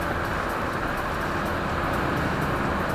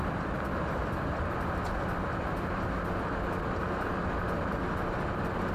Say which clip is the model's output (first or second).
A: second